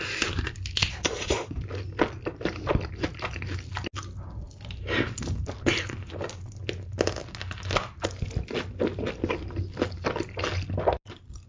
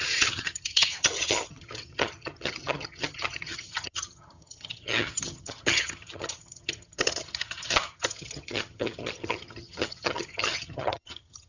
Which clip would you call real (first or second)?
first